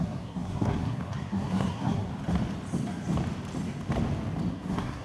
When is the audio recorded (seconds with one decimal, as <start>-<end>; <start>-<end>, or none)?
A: 2.1-4.5